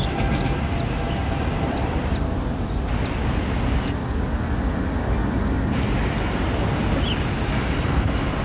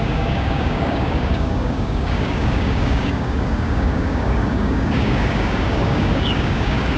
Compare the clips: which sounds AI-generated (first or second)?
second